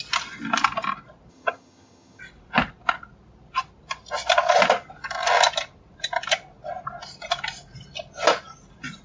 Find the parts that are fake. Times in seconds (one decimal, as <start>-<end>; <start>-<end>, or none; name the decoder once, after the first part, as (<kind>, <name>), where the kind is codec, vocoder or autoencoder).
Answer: 1.3-2.2 (vocoder, HiFi-GAN)